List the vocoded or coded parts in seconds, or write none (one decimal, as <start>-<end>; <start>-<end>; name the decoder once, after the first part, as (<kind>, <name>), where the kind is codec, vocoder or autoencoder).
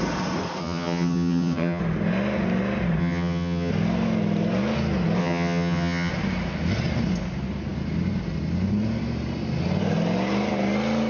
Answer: 0.6-1.8 (vocoder, HiFi-GAN); 3.0-3.7; 5.2-6.1